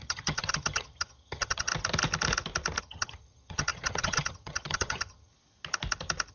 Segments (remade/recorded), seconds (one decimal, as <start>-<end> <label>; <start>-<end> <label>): 0.0-1.7 remade; 1.7-2.8 recorded; 2.8-5.3 remade; 5.3-6.3 recorded